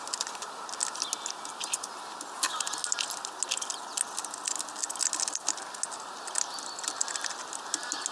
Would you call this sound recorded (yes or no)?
yes